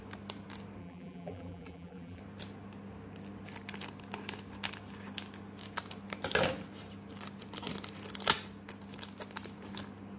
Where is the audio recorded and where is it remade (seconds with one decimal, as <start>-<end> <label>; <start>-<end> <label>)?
0.0-0.8 recorded; 0.8-2.2 remade; 2.2-10.2 recorded